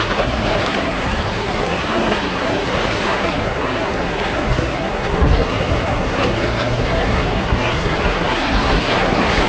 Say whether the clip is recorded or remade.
remade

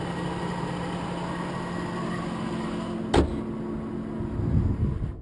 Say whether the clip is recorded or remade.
recorded